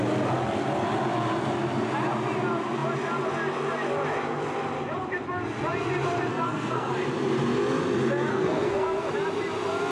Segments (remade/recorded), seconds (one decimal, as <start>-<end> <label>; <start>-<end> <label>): 0.0-6.3 recorded; 6.3-6.9 remade; 6.9-8.3 recorded; 8.3-9.1 remade; 9.1-9.9 recorded